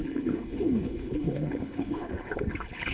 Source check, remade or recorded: remade